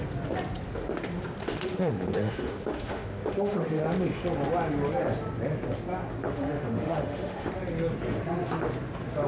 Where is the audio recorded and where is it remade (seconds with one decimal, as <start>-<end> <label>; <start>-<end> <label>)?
0.0-1.4 recorded; 1.4-3.8 remade; 3.8-6.3 recorded; 6.3-7.5 remade; 7.5-9.3 recorded